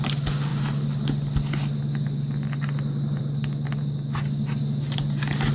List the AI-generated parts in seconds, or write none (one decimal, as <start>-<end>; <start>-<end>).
none